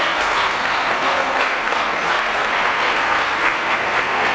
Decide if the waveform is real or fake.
fake